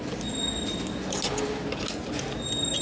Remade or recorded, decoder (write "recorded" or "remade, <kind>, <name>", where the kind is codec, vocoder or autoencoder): recorded